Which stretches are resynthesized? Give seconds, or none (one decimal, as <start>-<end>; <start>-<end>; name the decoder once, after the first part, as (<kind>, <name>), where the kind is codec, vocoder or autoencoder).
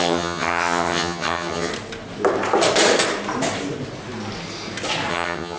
0.0-1.7 (vocoder, HiFi-GAN); 5.1-5.6